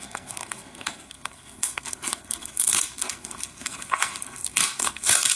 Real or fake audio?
fake